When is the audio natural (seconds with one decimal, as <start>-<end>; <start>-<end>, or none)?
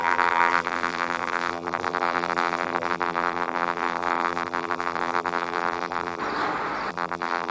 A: 6.2-6.9